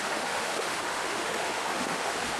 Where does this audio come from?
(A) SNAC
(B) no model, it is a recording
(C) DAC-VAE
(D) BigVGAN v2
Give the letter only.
C